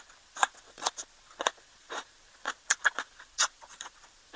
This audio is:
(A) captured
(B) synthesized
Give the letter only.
B